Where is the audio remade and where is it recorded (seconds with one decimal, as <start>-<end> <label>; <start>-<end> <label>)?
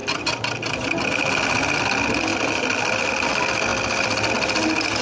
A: 0.0-5.0 recorded